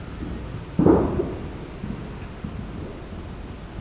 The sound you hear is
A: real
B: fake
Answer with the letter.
A